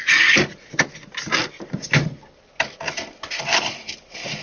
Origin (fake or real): real